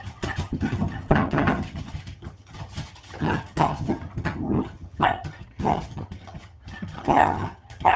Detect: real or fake fake